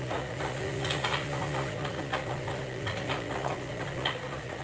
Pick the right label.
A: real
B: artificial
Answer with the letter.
B